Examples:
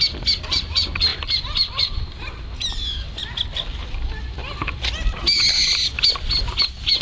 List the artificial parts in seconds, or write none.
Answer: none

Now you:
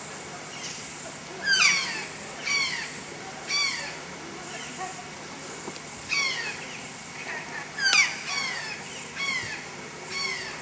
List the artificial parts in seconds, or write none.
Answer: none

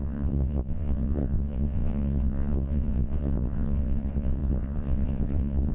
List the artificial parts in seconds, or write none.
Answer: 0.0-5.7

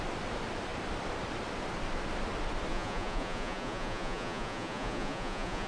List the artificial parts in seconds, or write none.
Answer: 2.7-5.7